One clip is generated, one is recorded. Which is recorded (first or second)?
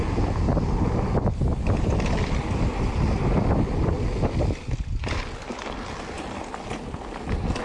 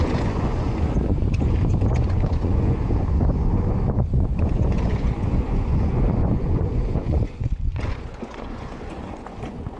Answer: first